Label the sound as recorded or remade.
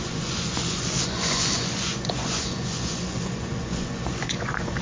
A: remade